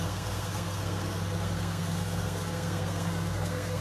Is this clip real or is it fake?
fake